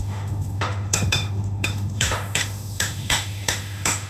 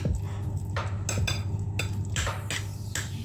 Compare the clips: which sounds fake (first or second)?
first